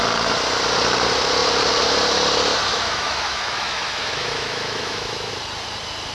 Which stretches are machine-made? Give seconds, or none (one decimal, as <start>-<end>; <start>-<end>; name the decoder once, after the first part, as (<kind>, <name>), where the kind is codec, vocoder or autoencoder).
2.7-5.3 (autoencoder, DAC-VAE)